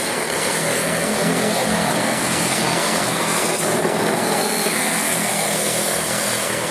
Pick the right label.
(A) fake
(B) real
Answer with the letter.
A